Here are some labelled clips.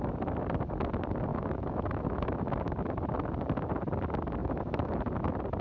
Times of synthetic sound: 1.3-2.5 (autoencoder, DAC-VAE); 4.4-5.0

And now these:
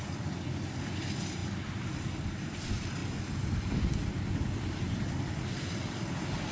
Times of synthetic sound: none

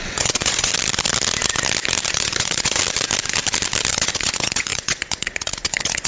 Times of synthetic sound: 0.0-0.7 (vocoder, Vocos); 2.1-2.8; 3.9-6.1